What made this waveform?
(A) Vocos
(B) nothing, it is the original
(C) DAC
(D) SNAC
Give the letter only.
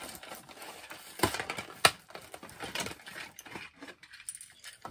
B